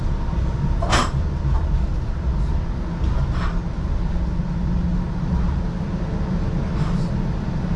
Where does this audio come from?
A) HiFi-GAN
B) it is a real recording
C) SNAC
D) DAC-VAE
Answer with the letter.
B